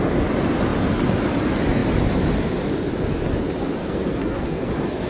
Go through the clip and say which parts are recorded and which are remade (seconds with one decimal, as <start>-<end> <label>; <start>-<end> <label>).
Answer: 0.0-3.8 recorded; 3.8-5.1 remade